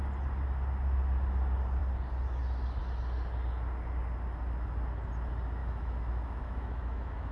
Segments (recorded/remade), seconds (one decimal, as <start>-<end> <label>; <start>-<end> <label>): 0.0-5.6 recorded; 5.6-7.3 remade